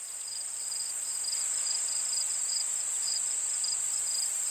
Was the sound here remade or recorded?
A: recorded